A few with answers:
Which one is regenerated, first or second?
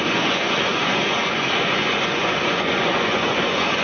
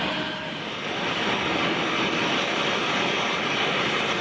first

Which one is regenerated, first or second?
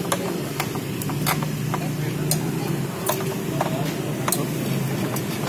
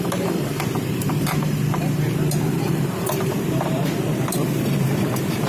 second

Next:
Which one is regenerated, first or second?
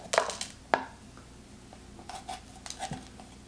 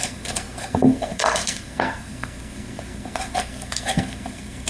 second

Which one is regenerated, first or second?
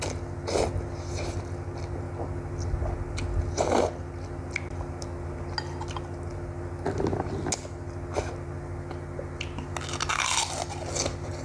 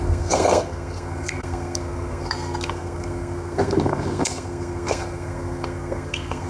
second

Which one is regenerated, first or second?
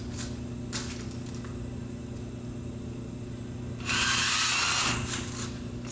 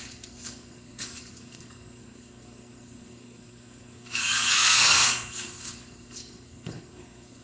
second